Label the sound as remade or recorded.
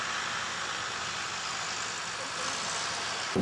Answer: recorded